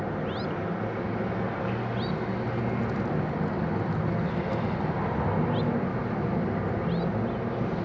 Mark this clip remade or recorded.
recorded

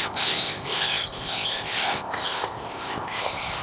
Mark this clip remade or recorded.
remade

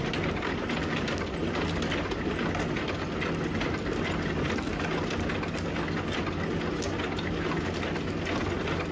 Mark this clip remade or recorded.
recorded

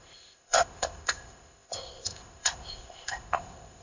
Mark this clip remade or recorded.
remade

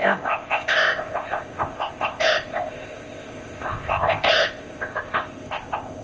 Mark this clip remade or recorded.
remade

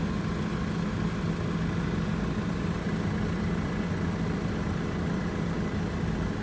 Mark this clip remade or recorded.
recorded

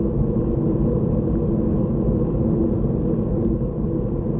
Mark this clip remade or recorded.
recorded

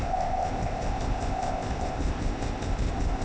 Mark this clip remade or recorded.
remade